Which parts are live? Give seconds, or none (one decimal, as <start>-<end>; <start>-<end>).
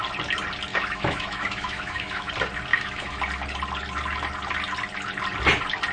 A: 0.0-0.7; 2.3-2.7; 3.2-5.9